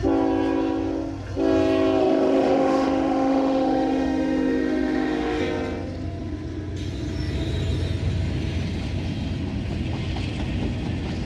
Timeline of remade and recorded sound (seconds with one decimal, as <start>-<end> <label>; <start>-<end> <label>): 0.0-2.0 recorded; 2.0-5.4 remade; 5.4-11.3 recorded